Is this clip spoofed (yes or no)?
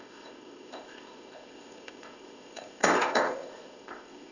yes